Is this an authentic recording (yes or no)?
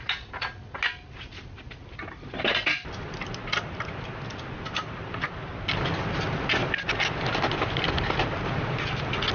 yes